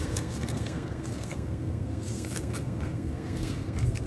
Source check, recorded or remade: remade